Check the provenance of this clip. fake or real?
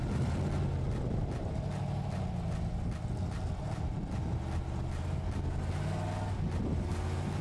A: real